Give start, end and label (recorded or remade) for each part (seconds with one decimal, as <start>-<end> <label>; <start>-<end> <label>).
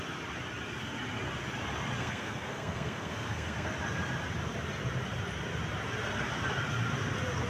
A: 0.0-2.0 recorded; 2.0-3.7 remade; 3.7-7.5 recorded